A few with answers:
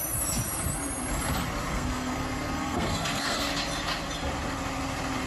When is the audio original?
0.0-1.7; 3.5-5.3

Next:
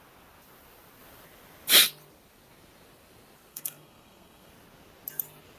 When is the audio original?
0.0-3.5; 4.5-5.6

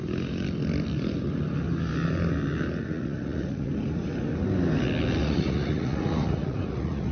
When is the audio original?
0.0-2.8; 3.7-5.2

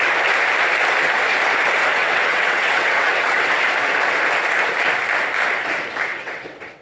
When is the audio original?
0.0-1.9; 3.6-6.1